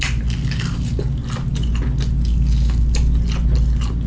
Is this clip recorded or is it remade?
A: recorded